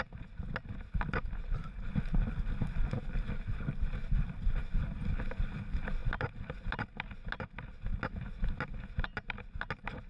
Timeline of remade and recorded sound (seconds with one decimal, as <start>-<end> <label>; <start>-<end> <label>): 0.0-10.1 recorded